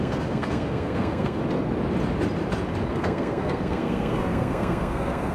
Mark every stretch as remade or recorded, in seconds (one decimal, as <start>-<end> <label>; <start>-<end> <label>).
0.0-1.4 remade; 1.4-2.9 recorded; 2.9-5.3 remade

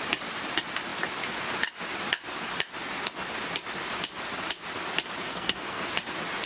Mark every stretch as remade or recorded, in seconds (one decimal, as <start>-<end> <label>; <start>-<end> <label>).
0.0-5.3 recorded; 5.3-5.8 remade; 5.8-6.5 recorded

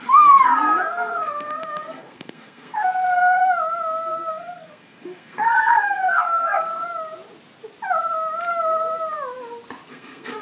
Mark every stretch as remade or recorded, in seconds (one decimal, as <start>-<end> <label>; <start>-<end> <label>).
0.0-3.4 remade; 3.4-4.1 recorded; 4.1-6.7 remade; 6.7-9.9 recorded; 9.9-10.4 remade